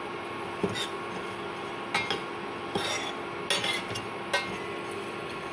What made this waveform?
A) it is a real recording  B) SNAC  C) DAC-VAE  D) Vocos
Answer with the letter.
A